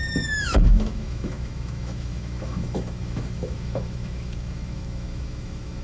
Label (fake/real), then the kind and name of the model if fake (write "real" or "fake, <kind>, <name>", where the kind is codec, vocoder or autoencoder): fake, autoencoder, DAC-VAE